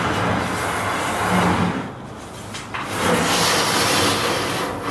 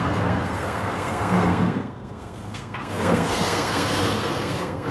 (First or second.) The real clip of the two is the first